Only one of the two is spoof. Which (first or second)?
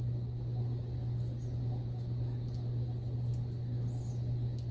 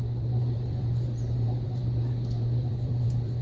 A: second